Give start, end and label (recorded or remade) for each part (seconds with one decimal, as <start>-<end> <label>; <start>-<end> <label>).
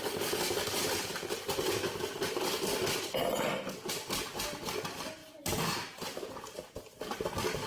0.0-5.2 recorded; 5.2-7.3 remade; 7.3-7.7 recorded